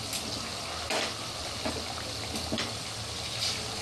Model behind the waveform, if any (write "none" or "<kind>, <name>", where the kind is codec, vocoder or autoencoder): none